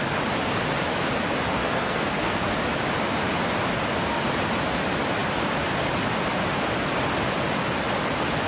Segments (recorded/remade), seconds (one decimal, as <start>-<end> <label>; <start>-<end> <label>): 0.0-1.6 recorded; 1.6-2.4 remade; 2.4-8.5 recorded